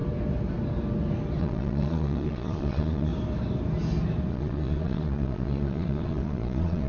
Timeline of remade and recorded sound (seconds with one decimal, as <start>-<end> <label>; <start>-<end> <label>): 0.0-1.4 recorded; 1.4-3.1 remade; 3.1-4.3 recorded; 4.3-6.9 remade